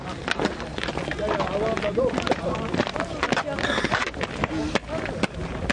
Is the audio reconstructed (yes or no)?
no